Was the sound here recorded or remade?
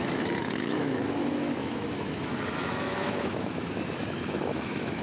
remade